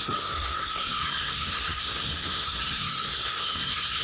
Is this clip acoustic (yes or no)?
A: no